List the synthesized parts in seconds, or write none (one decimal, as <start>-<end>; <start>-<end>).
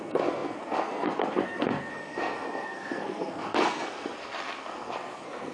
0.0-5.5